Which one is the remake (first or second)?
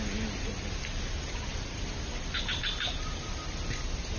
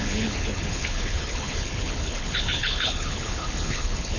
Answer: second